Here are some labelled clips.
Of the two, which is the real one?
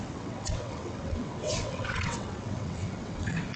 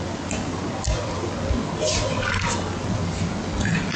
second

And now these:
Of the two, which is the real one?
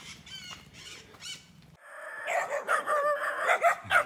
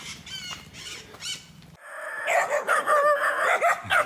second